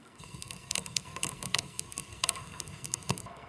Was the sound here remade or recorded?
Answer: remade